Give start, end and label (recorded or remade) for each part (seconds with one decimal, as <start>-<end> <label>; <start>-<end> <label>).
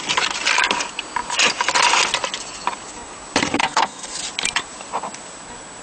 0.0-3.6 recorded; 3.6-4.2 remade; 4.2-5.8 recorded